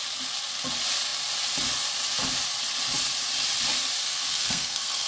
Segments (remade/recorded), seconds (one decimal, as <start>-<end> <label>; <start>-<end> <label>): 0.0-4.0 recorded; 4.0-5.1 remade